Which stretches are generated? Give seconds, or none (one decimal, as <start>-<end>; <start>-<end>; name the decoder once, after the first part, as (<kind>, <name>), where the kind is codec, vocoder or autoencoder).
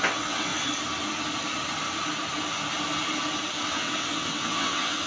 0.0-0.5 (vocoder, WaveNeXt); 3.6-5.1